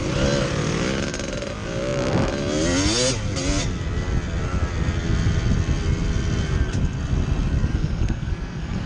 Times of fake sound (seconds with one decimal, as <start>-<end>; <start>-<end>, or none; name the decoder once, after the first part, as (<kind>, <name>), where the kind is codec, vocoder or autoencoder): 7.7-8.9 (codec, SNAC)

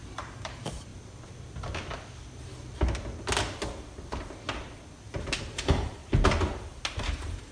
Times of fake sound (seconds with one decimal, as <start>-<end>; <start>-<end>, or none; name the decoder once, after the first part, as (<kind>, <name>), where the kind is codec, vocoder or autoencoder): 0.0-0.9 (vocoder, BigVGAN v2); 5.4-6.0; 7.0-7.5